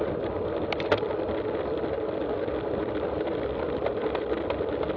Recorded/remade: recorded